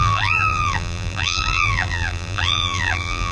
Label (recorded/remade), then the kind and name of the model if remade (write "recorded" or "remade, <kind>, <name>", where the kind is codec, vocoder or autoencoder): remade, vocoder, BigVGAN v2